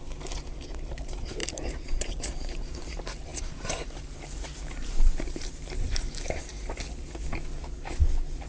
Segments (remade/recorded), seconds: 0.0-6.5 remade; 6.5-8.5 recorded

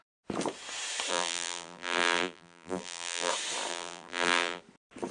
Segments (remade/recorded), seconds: 0.0-1.1 recorded; 1.1-3.3 remade; 3.3-3.7 recorded; 3.7-4.6 remade; 4.6-5.1 recorded

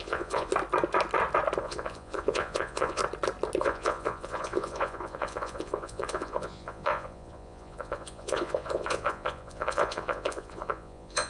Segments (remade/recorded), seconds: 0.0-0.5 remade; 0.5-1.6 recorded; 1.6-3.0 remade; 3.0-3.6 recorded; 3.6-11.3 remade

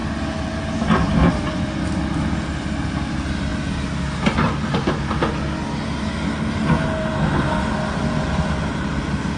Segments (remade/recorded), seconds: 0.0-9.4 recorded

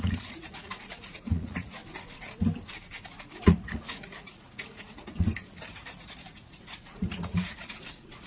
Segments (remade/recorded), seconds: 0.0-1.8 remade; 1.8-3.2 recorded; 3.2-5.1 remade; 5.1-5.7 recorded; 5.7-8.3 remade